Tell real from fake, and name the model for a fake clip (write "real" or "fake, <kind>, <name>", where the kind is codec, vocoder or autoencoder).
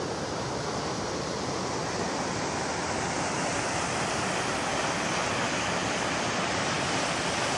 real